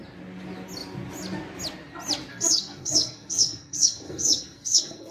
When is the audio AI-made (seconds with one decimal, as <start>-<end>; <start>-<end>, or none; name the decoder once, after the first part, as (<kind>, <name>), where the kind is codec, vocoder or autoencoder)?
2.3-5.1 (codec, SNAC)